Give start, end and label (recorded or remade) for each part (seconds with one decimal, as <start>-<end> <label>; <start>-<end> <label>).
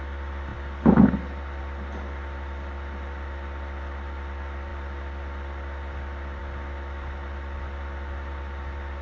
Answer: 0.0-9.0 recorded